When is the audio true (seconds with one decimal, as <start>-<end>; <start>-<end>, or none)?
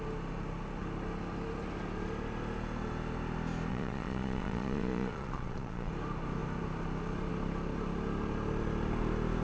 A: 0.0-3.7; 5.9-9.4